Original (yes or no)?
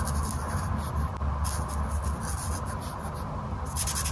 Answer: yes